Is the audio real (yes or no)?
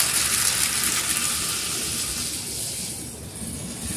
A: yes